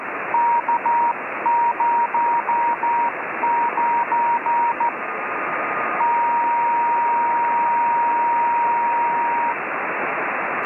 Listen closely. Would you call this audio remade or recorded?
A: recorded